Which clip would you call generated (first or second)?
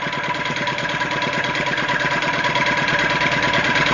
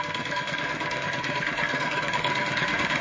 second